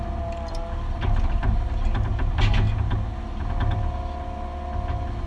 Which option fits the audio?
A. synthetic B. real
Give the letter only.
B